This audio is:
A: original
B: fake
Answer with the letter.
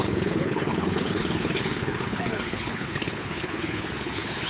B